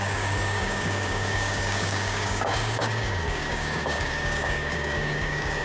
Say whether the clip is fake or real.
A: fake